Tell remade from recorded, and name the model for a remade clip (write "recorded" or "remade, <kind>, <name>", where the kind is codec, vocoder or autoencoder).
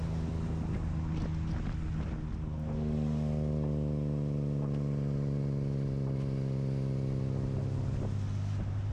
recorded